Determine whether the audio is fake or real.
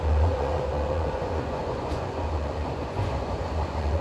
fake